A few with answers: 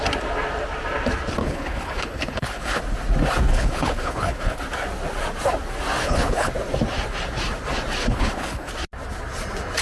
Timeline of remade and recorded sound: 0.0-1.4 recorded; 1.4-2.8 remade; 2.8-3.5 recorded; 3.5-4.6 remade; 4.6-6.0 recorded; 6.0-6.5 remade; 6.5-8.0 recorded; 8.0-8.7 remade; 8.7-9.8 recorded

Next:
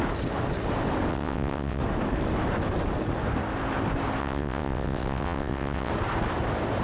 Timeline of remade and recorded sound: 0.0-1.1 recorded; 1.1-1.8 remade; 1.8-4.2 recorded; 4.2-5.9 remade; 5.9-6.8 recorded

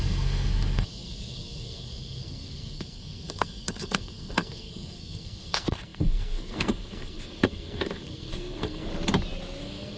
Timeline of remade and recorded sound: 0.0-8.9 remade; 8.9-9.6 recorded; 9.6-10.0 remade

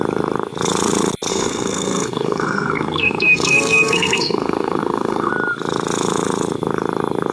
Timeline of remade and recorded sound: 0.0-1.3 recorded; 1.3-5.3 remade; 5.3-7.3 recorded

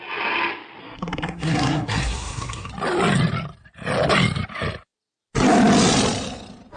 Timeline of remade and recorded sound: 0.0-0.8 recorded; 0.8-2.7 remade; 2.7-6.8 recorded

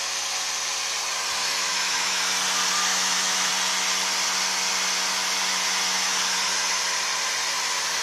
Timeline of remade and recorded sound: 0.0-1.4 recorded; 1.4-2.2 remade; 2.2-2.9 recorded; 2.9-3.5 remade; 3.5-8.0 recorded

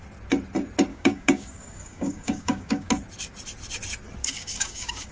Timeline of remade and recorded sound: 0.0-0.9 recorded; 0.9-2.9 remade; 2.9-4.2 recorded; 4.2-5.1 remade

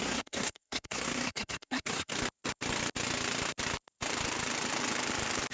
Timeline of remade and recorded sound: 0.0-2.1 remade; 2.1-5.5 recorded